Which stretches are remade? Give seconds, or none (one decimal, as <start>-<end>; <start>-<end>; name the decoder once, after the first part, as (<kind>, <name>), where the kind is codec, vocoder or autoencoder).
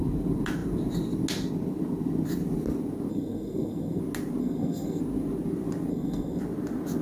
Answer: 3.1-4.0 (codec, SNAC); 4.4-5.0; 5.9-6.4